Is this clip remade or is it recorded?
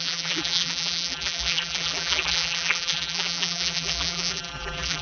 remade